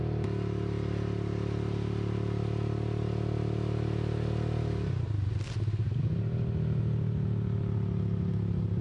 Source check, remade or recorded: recorded